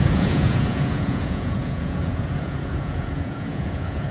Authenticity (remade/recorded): remade